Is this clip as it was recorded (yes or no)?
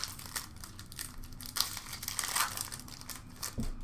yes